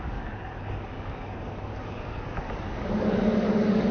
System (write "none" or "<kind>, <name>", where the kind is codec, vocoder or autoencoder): codec, DAC